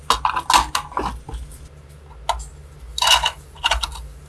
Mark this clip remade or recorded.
recorded